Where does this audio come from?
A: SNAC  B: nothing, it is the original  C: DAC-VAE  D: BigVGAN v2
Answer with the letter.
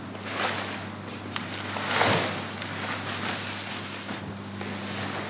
B